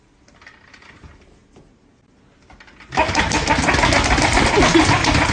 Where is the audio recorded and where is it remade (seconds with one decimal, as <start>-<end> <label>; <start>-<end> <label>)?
0.0-5.3 recorded